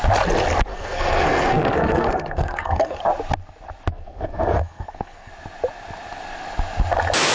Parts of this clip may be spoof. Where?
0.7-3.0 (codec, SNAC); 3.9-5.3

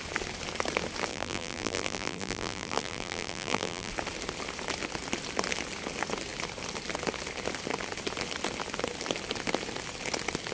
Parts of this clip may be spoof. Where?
1.1-3.9 (vocoder, BigVGAN v2)